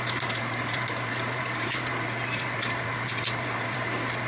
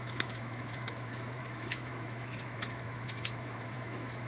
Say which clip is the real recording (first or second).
first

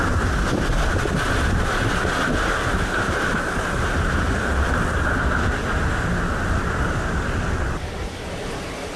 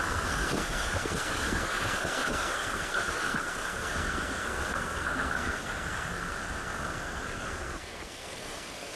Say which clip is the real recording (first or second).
first